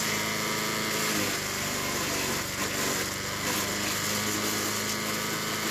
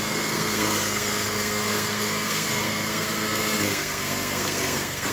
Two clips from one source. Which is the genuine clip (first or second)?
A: first